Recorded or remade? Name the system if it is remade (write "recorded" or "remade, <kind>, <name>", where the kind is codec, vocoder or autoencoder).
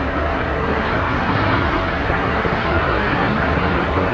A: remade, codec, SNAC